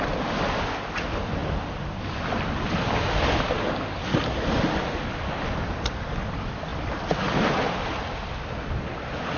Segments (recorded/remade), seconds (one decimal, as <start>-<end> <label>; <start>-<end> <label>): 0.0-9.4 recorded